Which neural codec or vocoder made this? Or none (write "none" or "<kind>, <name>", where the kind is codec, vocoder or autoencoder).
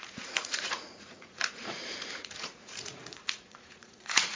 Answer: vocoder, Vocos